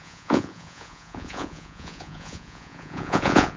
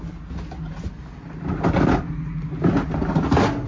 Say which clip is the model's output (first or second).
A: first